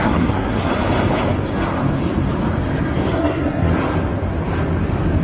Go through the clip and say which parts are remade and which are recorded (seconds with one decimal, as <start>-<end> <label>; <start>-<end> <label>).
0.0-0.7 remade; 0.7-3.1 recorded; 3.1-3.7 remade; 3.7-5.2 recorded